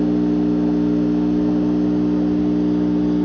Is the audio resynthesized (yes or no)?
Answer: no